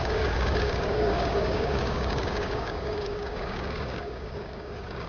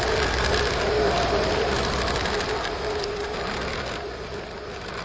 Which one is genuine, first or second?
second